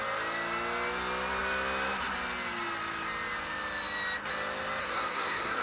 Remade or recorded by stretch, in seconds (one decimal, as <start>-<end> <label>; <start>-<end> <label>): 0.0-4.8 recorded; 4.8-5.6 remade